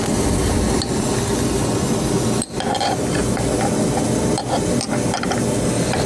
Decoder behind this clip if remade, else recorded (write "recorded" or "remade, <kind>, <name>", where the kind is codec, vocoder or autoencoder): recorded